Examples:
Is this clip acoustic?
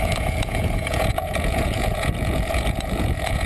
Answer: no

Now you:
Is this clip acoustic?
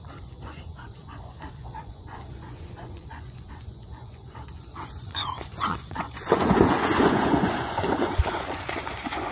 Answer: no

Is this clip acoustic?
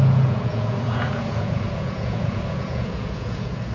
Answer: no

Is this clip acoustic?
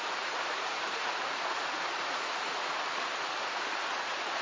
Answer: no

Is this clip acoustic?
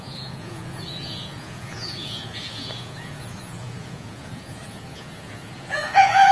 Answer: no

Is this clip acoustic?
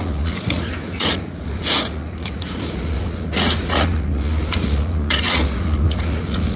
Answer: no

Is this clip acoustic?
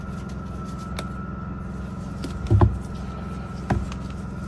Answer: yes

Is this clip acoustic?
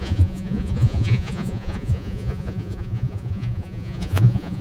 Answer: no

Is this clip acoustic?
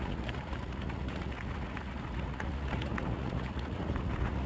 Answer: no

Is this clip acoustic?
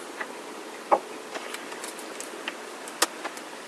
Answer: yes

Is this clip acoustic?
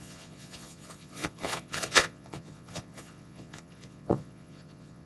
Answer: no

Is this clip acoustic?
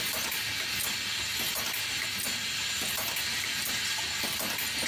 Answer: yes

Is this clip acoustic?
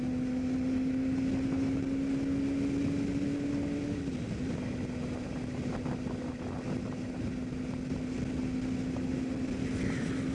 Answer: yes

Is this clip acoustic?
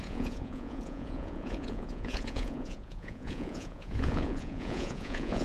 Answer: no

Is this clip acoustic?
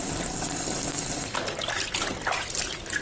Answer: yes